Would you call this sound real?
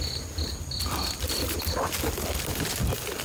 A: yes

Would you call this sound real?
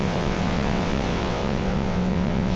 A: no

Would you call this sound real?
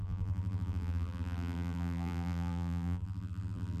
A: no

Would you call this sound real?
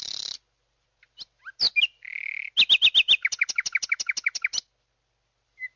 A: yes